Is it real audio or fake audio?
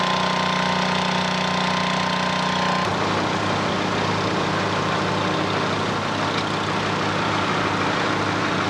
real